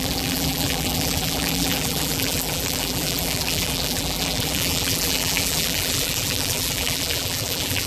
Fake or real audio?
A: fake